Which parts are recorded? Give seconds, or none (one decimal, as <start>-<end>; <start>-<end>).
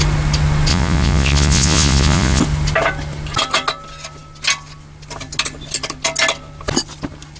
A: 0.0-0.7; 2.4-7.4